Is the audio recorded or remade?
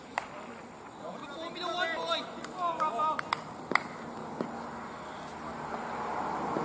recorded